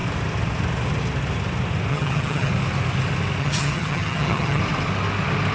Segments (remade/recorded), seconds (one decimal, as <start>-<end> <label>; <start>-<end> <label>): 0.0-1.9 recorded; 1.9-2.5 remade; 2.5-3.4 recorded; 3.4-4.6 remade; 4.6-5.5 recorded